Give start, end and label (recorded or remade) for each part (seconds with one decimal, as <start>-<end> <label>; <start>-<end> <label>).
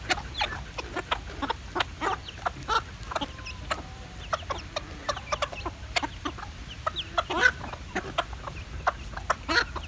0.0-9.9 recorded